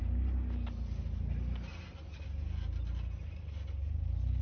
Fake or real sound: real